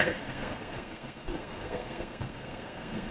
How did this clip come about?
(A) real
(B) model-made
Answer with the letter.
B